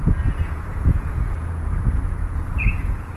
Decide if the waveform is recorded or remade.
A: remade